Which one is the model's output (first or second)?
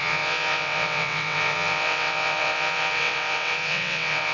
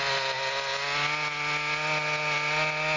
first